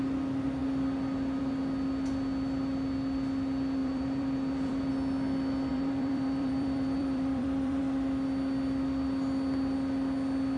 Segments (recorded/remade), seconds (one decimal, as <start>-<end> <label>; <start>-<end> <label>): 0.0-3.8 recorded; 3.8-4.9 remade; 4.9-5.7 recorded; 5.7-7.8 remade; 7.8-10.6 recorded